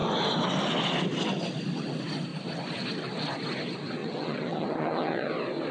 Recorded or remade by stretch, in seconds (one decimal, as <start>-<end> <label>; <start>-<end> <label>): 0.0-4.0 recorded; 4.0-5.3 remade; 5.3-5.7 recorded